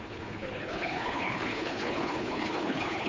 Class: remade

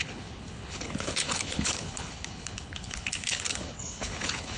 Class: remade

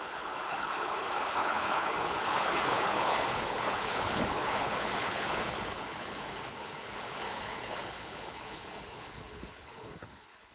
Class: remade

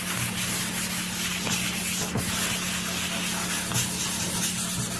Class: recorded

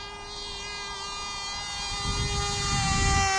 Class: recorded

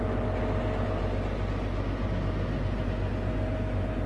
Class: recorded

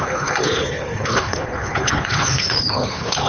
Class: remade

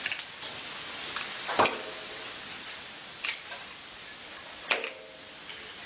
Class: recorded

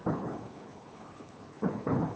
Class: remade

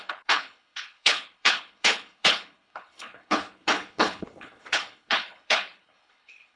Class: remade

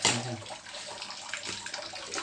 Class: recorded